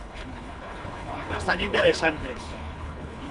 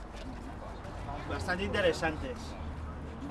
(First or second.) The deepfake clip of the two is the first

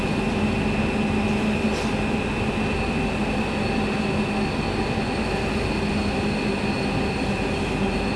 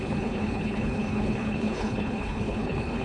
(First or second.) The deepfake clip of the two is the second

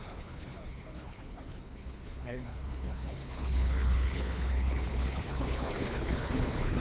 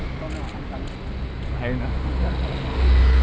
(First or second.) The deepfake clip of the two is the first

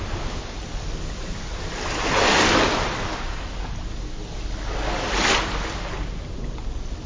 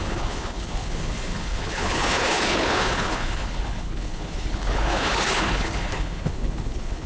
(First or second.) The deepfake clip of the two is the second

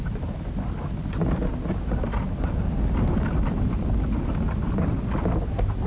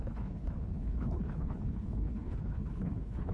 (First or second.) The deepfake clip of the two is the second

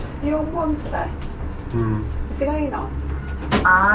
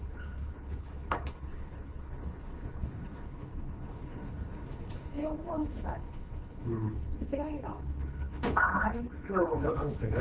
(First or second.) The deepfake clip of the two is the second